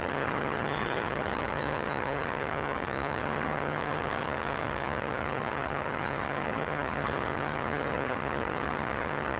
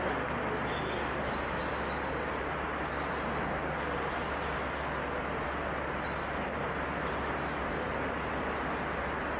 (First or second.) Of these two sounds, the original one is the second